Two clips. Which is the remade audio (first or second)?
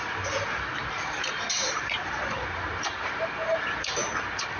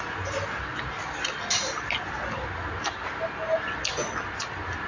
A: first